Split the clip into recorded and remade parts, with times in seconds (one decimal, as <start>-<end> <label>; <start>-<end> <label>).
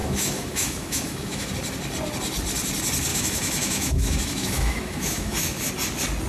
0.0-1.5 remade; 1.5-3.1 recorded; 3.1-5.7 remade; 5.7-6.3 recorded